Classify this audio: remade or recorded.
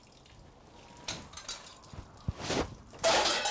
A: recorded